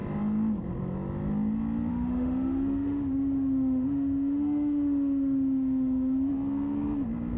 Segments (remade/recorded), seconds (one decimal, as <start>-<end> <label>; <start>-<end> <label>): 0.0-1.9 recorded; 1.9-6.3 remade; 6.3-7.4 recorded